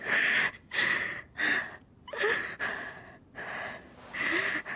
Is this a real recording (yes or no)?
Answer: yes